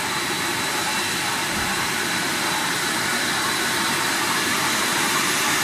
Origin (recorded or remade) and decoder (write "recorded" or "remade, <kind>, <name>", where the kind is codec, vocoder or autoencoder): remade, vocoder, BigVGAN v2